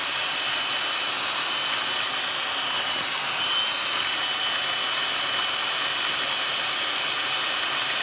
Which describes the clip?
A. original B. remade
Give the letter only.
A